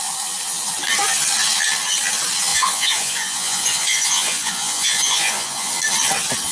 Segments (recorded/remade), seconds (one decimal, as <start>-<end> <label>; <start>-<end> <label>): 0.0-2.5 recorded; 2.5-5.7 remade; 5.7-6.5 recorded